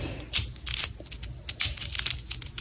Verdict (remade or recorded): recorded